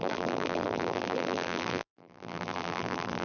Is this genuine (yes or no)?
no